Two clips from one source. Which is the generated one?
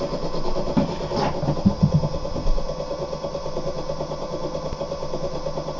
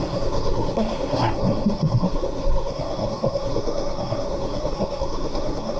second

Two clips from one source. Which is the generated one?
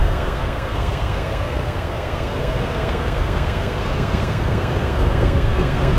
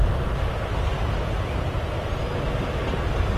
first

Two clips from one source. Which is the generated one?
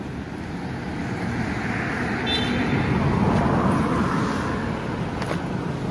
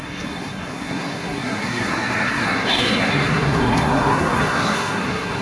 second